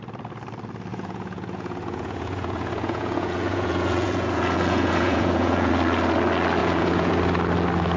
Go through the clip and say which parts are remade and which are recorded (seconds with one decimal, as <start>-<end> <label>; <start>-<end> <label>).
0.0-0.9 recorded; 0.9-5.7 remade; 5.7-6.6 recorded; 6.6-7.1 remade; 7.1-8.0 recorded